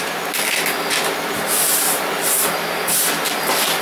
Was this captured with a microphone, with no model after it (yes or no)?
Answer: yes